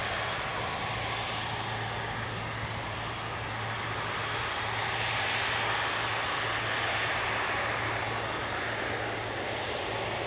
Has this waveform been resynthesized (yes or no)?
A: no